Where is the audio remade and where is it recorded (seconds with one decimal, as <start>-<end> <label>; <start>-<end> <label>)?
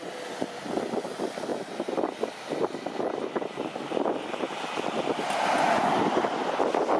0.0-7.0 recorded